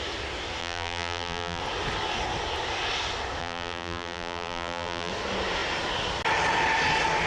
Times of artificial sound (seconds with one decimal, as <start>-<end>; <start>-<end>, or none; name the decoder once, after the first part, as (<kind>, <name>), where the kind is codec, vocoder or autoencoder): 0.6-1.6 (vocoder, BigVGAN v2); 3.4-5.1